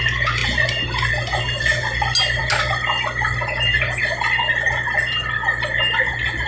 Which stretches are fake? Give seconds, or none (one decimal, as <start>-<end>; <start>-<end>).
none